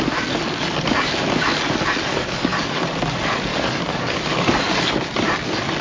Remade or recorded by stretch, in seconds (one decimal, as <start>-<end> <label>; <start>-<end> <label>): 0.0-2.1 recorded; 2.1-2.8 remade; 2.8-3.5 recorded; 3.5-4.9 remade; 4.9-5.8 recorded